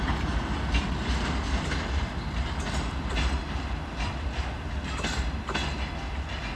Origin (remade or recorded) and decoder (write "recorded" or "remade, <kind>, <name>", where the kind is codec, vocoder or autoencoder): remade, vocoder, BigVGAN v2